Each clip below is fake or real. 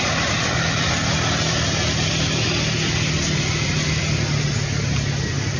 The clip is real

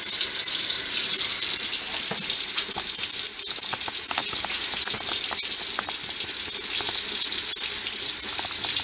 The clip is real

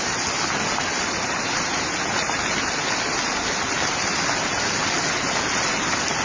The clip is real